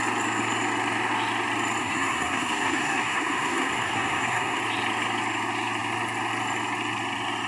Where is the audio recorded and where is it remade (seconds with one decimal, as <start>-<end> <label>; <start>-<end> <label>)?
0.0-1.8 recorded; 1.8-4.6 remade; 4.6-7.5 recorded